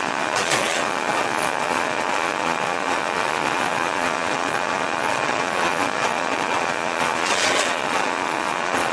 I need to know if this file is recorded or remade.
remade